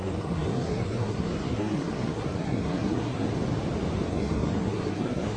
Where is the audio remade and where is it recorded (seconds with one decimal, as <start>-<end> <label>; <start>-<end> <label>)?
0.0-3.3 remade; 3.3-4.1 recorded; 4.1-5.4 remade

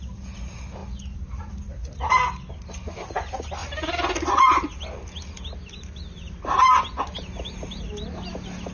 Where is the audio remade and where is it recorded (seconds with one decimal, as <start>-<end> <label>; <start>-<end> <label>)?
0.0-8.7 recorded

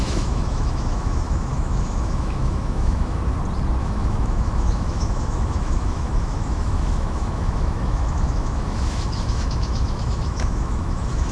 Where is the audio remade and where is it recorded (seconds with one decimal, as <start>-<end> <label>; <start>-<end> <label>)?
0.0-3.2 remade; 3.2-3.8 recorded; 3.8-11.3 remade

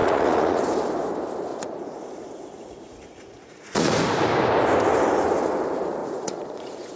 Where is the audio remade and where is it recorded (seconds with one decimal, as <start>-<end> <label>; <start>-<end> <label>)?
0.0-0.6 remade; 0.6-1.5 recorded; 1.5-4.0 remade; 4.0-6.0 recorded; 6.0-7.0 remade

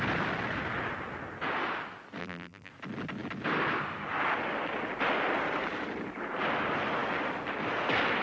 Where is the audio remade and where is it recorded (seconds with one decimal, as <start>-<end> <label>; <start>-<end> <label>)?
0.0-2.2 recorded; 2.2-2.7 remade; 2.7-8.2 recorded